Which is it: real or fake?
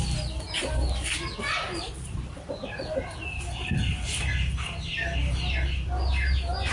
real